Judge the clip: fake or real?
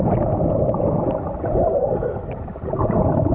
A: real